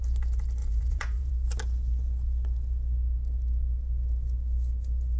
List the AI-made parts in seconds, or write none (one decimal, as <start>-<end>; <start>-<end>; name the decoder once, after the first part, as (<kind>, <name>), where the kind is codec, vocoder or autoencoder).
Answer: 0.6-1.3 (vocoder, Vocos)